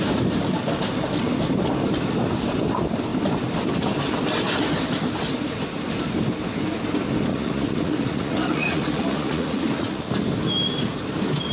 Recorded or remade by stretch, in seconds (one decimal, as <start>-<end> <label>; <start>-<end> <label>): 0.0-7.3 recorded; 7.3-10.1 remade; 10.1-11.5 recorded